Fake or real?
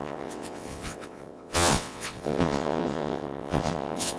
fake